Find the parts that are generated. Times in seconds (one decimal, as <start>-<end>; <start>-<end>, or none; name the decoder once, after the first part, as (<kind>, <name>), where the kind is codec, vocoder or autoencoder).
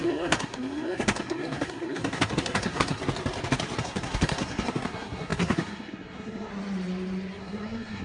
0.0-3.0 (codec, SNAC); 3.8-6.5; 7.4-8.0